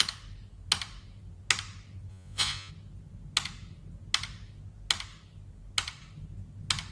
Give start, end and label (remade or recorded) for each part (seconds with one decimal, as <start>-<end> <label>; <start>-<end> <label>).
0.0-2.1 recorded; 2.1-2.7 remade; 2.7-6.9 recorded